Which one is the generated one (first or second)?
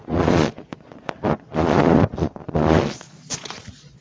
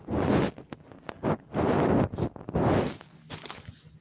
first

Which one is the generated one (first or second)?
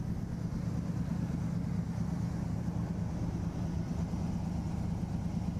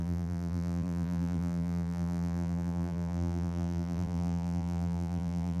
second